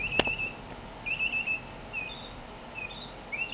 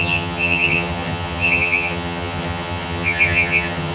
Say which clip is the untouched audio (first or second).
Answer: first